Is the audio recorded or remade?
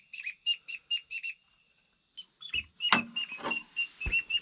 recorded